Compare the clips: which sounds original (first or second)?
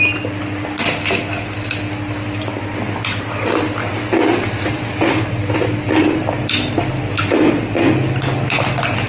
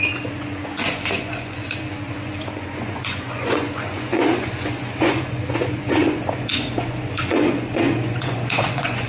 first